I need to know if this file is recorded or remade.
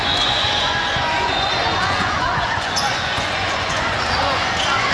remade